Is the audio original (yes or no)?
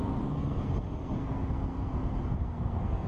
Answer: no